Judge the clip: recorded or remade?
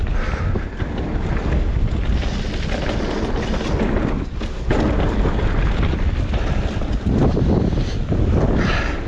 recorded